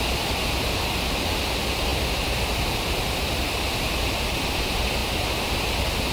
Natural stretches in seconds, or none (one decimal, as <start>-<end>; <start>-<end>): 0.0-6.1